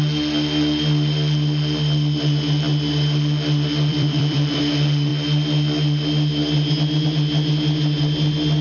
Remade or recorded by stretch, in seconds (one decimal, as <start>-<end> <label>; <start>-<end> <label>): 0.0-3.9 recorded; 3.9-4.6 remade; 4.6-8.6 recorded